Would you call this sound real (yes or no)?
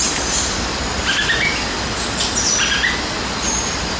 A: yes